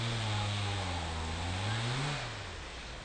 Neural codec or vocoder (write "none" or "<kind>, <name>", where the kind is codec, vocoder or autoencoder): none